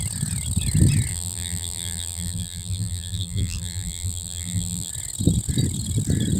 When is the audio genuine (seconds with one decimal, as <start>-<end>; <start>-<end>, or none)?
0.0-1.1; 4.9-6.4